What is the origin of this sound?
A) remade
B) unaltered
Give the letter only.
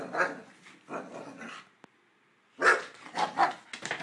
B